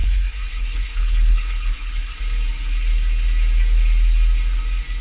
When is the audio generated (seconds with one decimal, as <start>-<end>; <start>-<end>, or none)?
0.0-2.2